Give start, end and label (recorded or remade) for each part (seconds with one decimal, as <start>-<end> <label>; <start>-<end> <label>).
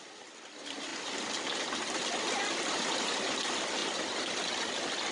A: 0.0-5.1 recorded